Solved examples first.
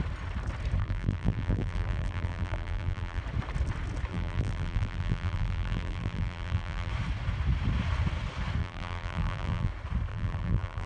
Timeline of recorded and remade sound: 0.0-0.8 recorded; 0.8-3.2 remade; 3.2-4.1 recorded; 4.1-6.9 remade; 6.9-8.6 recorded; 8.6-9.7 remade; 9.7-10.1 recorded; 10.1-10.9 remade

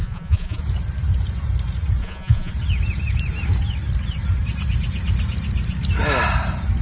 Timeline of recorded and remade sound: 0.0-0.6 remade; 0.6-2.0 recorded; 2.0-2.5 remade; 2.5-6.8 recorded

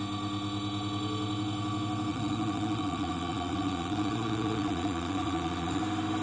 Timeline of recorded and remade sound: 0.0-2.1 recorded; 2.1-5.8 remade; 5.8-6.2 recorded

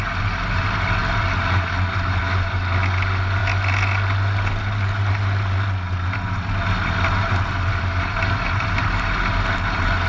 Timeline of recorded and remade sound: 0.0-10.1 recorded

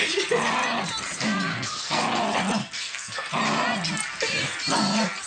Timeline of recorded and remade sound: 0.0-1.5 recorded; 1.5-2.0 remade; 2.0-2.6 recorded; 2.6-3.3 remade; 3.3-5.3 recorded